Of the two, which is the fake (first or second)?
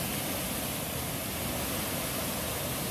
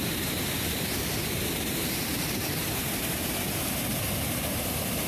second